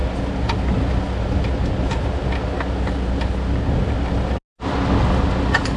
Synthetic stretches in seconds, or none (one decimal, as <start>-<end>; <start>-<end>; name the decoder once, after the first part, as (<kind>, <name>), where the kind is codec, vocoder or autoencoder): none